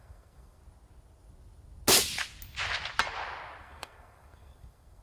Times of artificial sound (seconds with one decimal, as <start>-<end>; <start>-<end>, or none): 0.0-0.6; 3.6-5.0